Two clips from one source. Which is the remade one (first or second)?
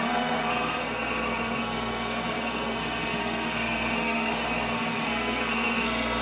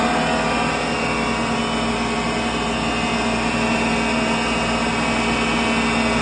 first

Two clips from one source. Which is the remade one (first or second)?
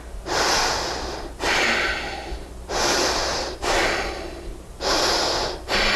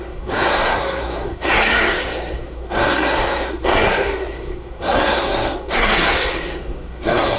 second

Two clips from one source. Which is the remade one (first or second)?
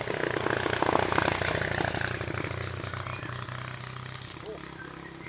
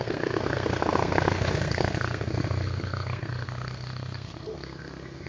second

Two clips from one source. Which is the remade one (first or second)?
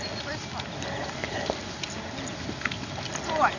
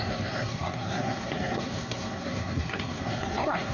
second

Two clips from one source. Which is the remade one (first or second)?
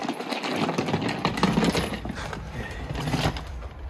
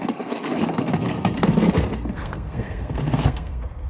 second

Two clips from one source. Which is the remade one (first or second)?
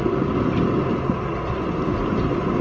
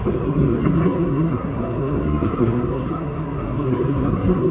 second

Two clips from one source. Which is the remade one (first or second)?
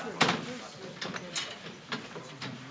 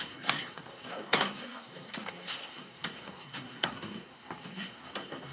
second